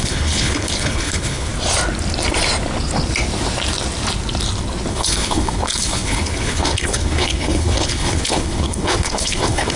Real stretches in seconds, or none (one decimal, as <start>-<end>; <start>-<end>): 1.5-4.9